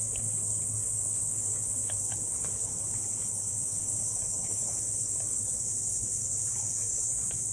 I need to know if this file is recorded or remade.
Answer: remade